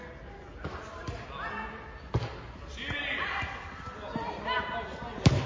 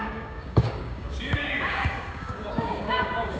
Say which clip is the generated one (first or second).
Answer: second